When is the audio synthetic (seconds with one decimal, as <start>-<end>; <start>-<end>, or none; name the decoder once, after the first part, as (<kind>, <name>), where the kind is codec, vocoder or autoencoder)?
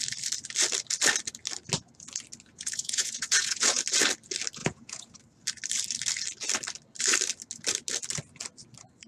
2.5-3.8 (vocoder, Vocos); 4.6-5.1